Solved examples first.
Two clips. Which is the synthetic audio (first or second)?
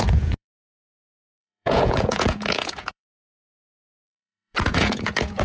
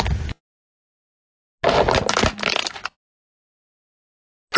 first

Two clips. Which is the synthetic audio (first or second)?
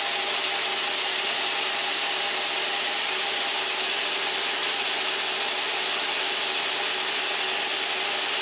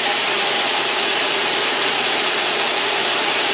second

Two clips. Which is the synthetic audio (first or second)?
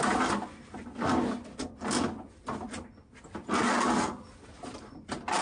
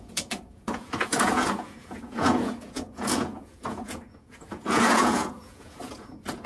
second